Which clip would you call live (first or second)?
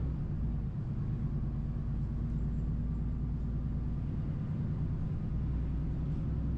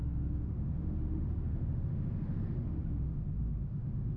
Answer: first